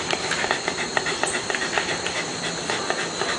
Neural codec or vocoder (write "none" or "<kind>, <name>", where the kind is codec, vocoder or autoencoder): vocoder, BigVGAN v2